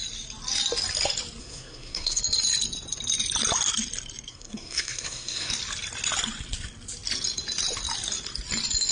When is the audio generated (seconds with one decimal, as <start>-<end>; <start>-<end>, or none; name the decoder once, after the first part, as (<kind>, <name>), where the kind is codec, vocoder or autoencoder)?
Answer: 1.4-2.2 (codec, SNAC); 4.3-5.5